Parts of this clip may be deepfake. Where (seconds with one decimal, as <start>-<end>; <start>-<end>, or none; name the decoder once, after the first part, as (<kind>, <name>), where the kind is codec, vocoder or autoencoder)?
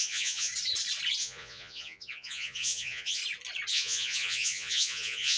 0.0-0.5 (vocoder, Vocos); 1.2-3.2; 3.7-5.4